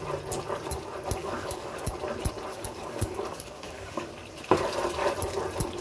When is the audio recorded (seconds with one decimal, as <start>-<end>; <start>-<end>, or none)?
0.0-1.2; 1.8-2.5; 4.1-5.8